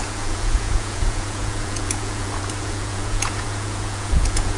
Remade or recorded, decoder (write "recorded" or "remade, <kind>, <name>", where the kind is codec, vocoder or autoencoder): remade, vocoder, Vocos